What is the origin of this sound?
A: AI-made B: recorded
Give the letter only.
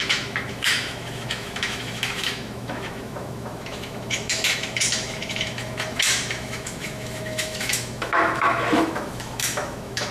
A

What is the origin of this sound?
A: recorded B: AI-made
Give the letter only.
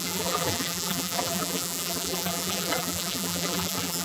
B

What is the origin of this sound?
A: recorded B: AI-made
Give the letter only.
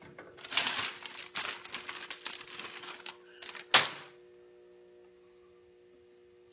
A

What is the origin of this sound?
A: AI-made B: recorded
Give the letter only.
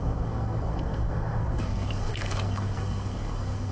A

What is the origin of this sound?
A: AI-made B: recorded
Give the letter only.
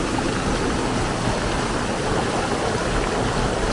B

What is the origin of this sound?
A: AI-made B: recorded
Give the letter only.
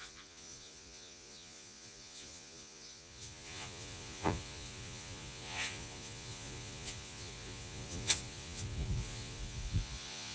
A